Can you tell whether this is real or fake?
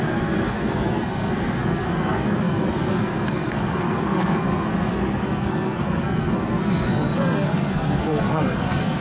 fake